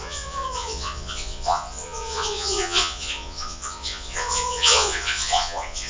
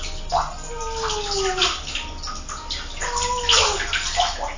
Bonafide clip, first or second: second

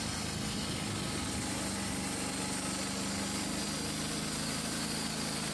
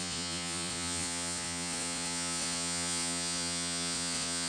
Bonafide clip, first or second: first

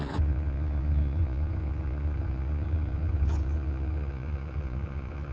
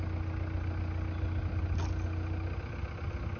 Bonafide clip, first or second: second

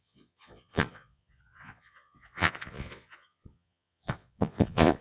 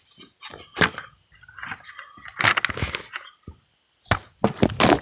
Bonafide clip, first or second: second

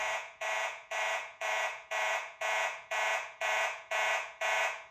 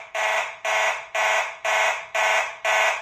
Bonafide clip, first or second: second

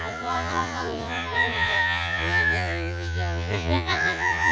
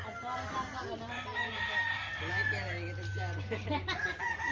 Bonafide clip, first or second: second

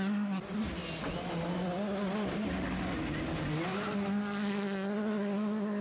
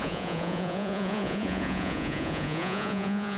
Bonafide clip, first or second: first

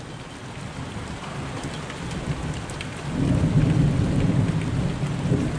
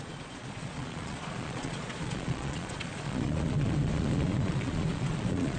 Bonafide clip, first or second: first